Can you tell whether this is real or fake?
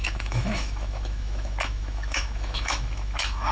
fake